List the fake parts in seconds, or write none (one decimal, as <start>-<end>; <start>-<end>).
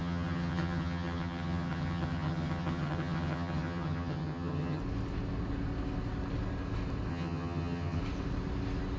0.0-4.8; 7.1-8.0